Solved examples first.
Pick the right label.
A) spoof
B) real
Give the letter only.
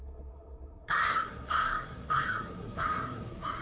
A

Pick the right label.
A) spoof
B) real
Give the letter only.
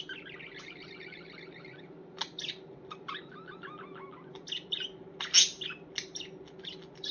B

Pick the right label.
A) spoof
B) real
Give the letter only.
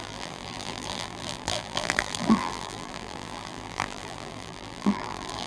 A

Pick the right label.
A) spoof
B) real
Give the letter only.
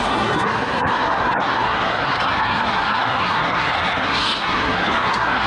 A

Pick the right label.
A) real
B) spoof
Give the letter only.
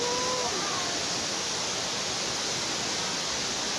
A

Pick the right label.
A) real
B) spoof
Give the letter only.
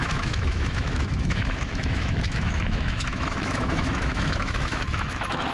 B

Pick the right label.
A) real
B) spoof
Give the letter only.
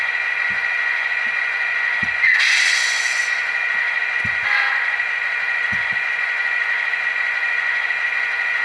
B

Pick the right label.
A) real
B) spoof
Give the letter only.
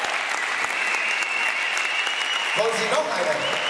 A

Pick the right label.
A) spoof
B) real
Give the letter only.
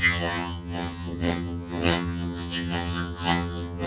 A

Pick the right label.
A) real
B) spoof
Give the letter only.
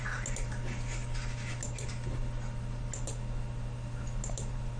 A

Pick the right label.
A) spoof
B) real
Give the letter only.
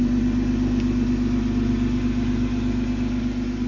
B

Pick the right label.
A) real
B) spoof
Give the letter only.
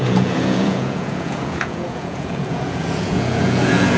B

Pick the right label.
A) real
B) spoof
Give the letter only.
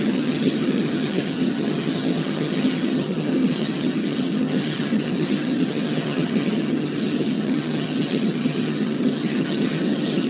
B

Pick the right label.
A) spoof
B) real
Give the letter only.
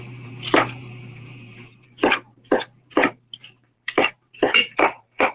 A